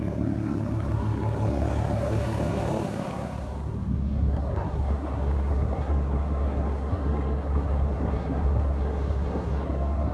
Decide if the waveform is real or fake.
fake